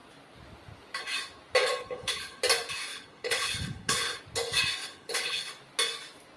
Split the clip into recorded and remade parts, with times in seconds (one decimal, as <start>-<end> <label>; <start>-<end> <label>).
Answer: 0.0-1.8 recorded; 1.8-2.4 remade; 2.4-2.9 recorded; 2.9-4.2 remade; 4.2-4.8 recorded; 4.8-5.5 remade; 5.5-6.4 recorded